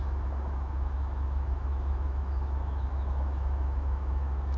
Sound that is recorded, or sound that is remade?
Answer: remade